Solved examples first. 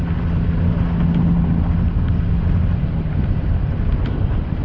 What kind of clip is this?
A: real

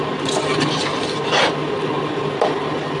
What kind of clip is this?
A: real